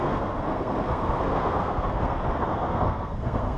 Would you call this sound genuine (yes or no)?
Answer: no